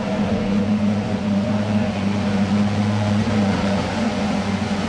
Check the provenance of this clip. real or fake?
fake